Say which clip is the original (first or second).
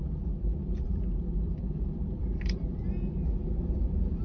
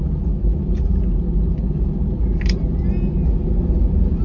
second